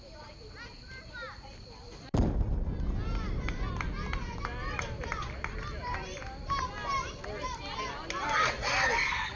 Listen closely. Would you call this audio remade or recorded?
recorded